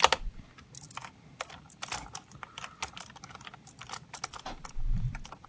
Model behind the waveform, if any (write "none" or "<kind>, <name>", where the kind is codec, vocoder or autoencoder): none